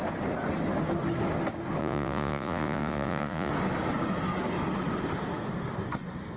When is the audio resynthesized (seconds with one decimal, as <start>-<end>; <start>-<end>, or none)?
1.8-3.5